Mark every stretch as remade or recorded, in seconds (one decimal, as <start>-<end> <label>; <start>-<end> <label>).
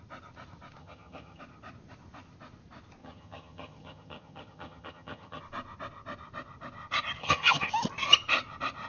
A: 0.0-0.8 recorded; 0.8-1.4 remade; 1.4-3.0 recorded; 3.0-5.4 remade; 5.4-7.2 recorded; 7.2-7.7 remade; 7.7-8.9 recorded